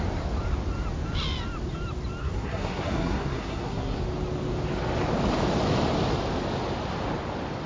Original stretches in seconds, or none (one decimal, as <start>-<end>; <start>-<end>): 0.0-2.2; 4.0-7.7